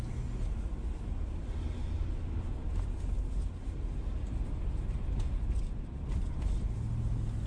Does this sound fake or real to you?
real